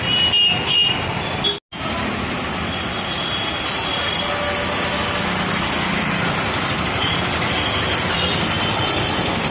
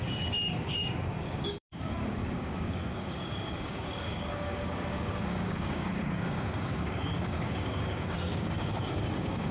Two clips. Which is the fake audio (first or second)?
second